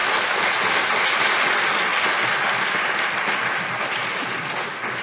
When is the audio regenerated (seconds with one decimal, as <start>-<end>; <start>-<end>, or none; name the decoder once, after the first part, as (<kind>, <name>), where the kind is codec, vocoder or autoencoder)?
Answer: none